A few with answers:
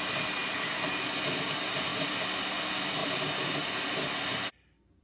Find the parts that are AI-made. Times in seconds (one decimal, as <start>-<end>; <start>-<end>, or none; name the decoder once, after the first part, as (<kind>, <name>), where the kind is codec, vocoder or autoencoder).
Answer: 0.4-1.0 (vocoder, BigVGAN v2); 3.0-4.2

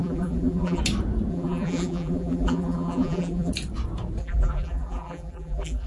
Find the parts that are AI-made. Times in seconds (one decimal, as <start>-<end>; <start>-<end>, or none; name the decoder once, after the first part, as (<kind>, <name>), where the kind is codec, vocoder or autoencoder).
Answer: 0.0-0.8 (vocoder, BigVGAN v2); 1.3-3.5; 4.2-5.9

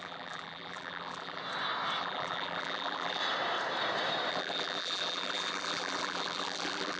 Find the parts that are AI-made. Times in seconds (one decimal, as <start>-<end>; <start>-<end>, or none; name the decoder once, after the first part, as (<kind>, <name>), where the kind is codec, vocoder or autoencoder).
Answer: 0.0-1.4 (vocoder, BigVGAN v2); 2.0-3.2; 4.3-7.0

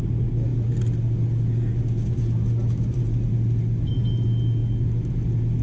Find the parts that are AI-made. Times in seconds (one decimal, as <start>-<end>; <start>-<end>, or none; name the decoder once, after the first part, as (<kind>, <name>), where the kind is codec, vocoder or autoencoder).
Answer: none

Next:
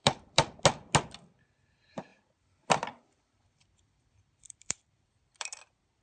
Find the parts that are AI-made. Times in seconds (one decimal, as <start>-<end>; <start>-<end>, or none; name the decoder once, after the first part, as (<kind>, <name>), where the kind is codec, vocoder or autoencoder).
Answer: 0.0-0.6 (vocoder, BigVGAN v2); 2.1-5.6